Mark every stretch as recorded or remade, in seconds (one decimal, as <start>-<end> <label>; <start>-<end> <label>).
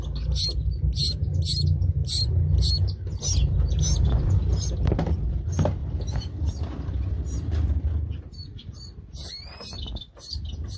0.0-8.5 recorded; 8.5-9.9 remade; 9.9-10.8 recorded